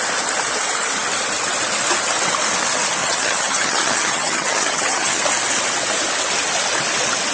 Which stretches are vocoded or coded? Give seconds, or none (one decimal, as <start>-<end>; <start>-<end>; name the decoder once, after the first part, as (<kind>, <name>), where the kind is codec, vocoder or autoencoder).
3.0-5.2 (vocoder, HiFi-GAN)